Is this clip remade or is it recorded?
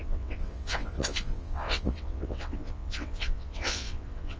remade